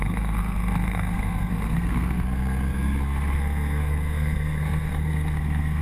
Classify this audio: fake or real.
fake